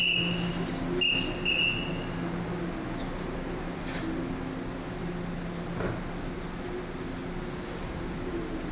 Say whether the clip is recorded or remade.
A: recorded